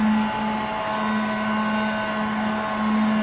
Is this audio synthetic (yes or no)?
no